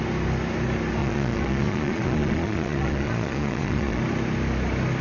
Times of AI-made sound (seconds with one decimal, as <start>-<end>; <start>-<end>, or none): 1.0-4.0